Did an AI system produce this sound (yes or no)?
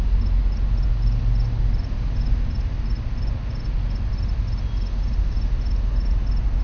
no